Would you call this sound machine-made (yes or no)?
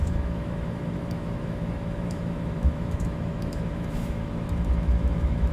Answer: yes